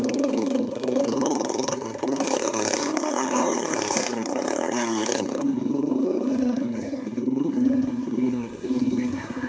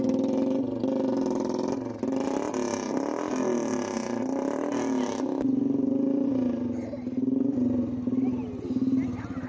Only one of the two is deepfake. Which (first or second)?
first